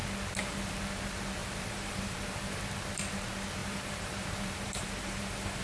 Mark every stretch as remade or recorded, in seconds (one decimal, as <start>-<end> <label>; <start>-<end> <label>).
0.0-1.4 recorded; 1.4-2.6 remade; 2.6-3.6 recorded; 3.6-5.6 remade